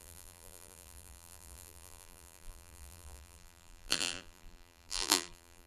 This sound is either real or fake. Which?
fake